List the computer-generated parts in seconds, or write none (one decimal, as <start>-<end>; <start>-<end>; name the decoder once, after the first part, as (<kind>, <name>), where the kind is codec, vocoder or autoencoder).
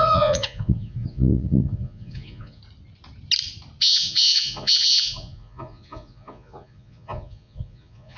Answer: 0.0-2.6 (vocoder, Vocos); 3.8-8.2